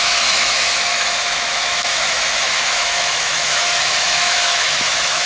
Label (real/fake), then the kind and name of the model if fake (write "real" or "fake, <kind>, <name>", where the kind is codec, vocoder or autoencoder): fake, autoencoder, DAC-VAE